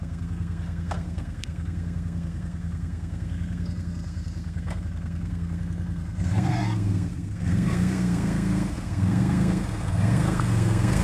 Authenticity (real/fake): fake